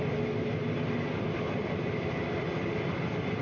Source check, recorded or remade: recorded